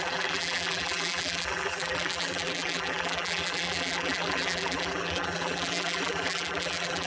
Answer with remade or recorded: remade